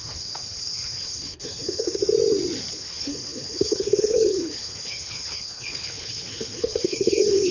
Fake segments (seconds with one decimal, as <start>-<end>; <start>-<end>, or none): 0.0-2.0; 2.7-7.5